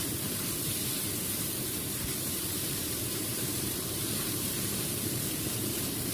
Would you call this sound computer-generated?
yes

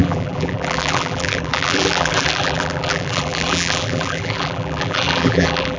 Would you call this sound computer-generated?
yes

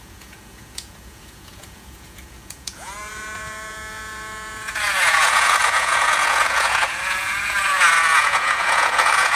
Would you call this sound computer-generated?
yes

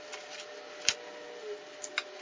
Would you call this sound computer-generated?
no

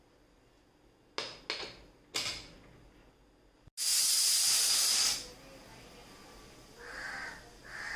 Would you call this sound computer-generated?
no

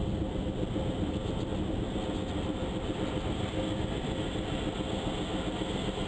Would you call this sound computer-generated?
no